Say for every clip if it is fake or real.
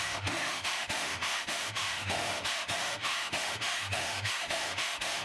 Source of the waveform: fake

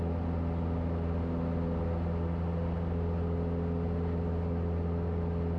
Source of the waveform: real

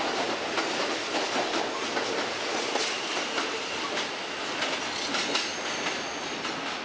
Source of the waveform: real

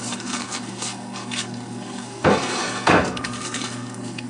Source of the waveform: fake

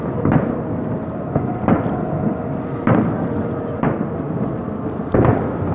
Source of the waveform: real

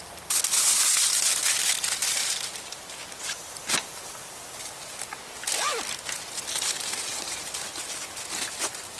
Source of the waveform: real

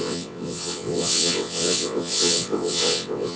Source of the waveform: fake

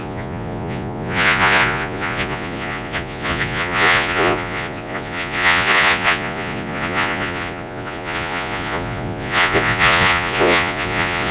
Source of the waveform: fake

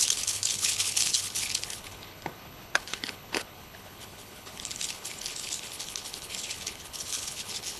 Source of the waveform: fake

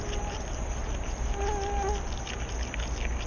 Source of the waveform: real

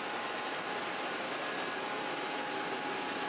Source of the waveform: real